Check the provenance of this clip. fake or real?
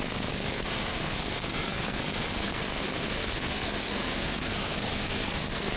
fake